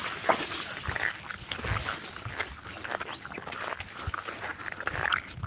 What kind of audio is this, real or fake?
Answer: real